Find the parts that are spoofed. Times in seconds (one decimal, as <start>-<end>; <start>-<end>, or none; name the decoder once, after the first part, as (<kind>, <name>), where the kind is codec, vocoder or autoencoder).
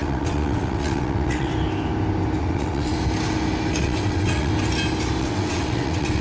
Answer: 0.0-1.5 (vocoder, WaveNeXt); 2.4-2.9; 3.7-4.5; 5.2-6.2